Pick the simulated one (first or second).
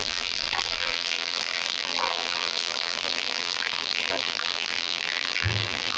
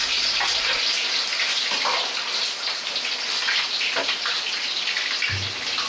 first